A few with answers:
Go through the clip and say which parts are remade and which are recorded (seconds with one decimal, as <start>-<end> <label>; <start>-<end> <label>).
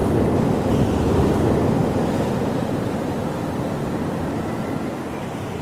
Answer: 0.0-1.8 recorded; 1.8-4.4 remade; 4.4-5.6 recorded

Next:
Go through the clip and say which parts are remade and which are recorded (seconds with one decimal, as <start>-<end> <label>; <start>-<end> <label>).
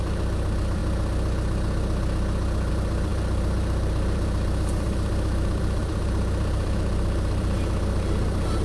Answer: 0.0-0.8 remade; 0.8-2.7 recorded; 2.7-8.6 remade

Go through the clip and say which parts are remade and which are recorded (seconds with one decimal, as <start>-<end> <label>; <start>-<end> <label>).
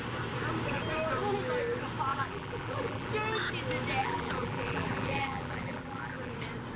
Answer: 0.0-2.1 recorded; 2.1-3.1 remade; 3.1-4.0 recorded; 4.0-6.3 remade; 6.3-6.8 recorded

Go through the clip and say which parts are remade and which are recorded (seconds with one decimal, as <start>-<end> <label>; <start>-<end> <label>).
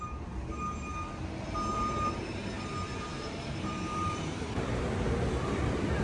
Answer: 0.0-1.7 recorded; 1.7-2.5 remade; 2.5-3.1 recorded; 3.1-4.7 remade; 4.7-6.0 recorded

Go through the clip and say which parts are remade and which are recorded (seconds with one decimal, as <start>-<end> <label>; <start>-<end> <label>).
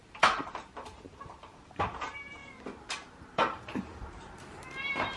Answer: 0.0-2.4 remade; 2.4-3.1 recorded; 3.1-5.2 remade